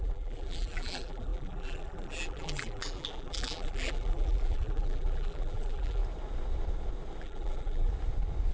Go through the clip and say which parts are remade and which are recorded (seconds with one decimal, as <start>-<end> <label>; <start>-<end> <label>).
0.0-6.0 remade; 6.0-7.2 recorded; 7.2-7.9 remade; 7.9-8.5 recorded